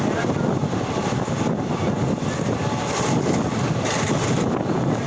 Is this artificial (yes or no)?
no